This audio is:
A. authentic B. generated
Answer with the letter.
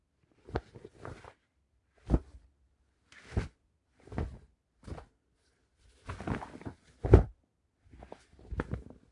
A